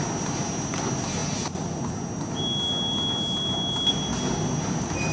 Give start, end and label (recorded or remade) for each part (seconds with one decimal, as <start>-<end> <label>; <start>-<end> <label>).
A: 0.0-5.1 recorded